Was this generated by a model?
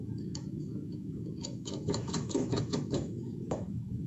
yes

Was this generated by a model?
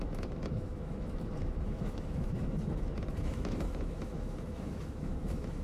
yes